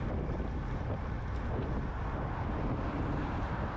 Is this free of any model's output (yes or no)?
yes